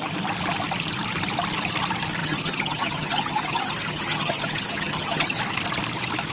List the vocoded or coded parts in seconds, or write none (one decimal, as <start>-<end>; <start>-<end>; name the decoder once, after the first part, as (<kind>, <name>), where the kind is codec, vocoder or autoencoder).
2.2-5.4 (vocoder, HiFi-GAN)